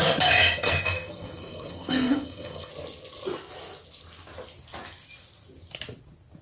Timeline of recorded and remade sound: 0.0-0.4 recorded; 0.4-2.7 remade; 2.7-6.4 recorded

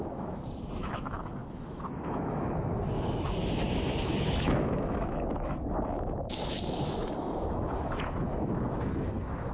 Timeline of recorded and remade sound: 0.0-9.5 remade

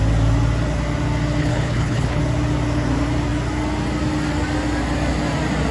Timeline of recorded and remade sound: 0.0-1.4 recorded; 1.4-2.2 remade; 2.2-5.7 recorded

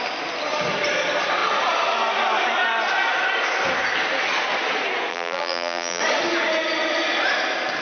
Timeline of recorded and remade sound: 0.0-5.1 recorded; 5.1-6.0 remade; 6.0-7.8 recorded

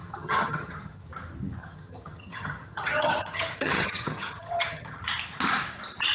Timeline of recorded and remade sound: 0.0-1.1 remade; 1.1-1.6 recorded; 1.6-5.0 remade; 5.0-6.1 recorded

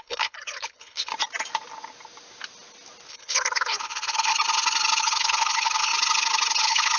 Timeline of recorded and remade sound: 0.0-1.1 remade; 1.1-3.1 recorded; 3.1-4.3 remade; 4.3-5.0 recorded; 5.0-5.9 remade; 5.9-6.6 recorded; 6.6-7.0 remade

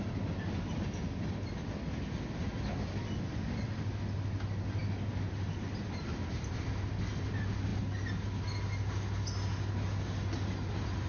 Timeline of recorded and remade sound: 0.0-11.1 recorded